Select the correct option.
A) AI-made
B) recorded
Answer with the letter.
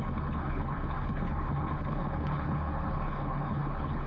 A